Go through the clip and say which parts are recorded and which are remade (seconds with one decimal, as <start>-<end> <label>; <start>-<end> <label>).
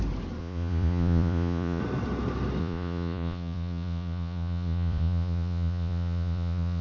0.0-0.4 recorded; 0.4-1.8 remade; 1.8-2.6 recorded; 2.6-6.8 remade